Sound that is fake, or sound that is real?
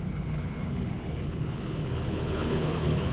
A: fake